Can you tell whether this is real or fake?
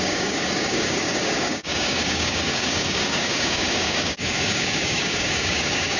fake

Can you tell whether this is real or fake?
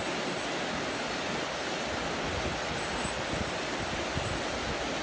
real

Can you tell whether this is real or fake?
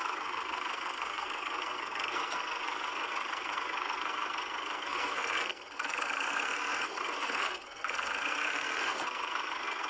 fake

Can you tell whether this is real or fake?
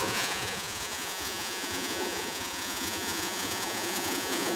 fake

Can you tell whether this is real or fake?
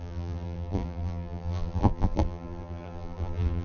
fake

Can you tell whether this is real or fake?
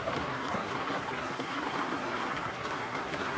fake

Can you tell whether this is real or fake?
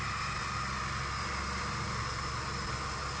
real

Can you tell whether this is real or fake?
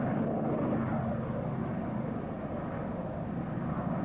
real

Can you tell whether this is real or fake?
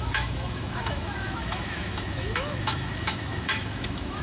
fake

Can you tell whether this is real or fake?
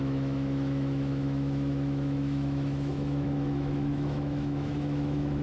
fake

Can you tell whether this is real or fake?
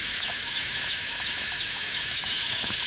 fake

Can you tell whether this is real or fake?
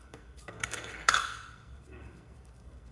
fake